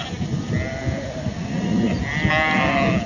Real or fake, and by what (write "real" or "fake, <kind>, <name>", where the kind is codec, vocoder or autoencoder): real